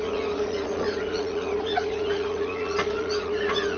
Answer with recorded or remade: remade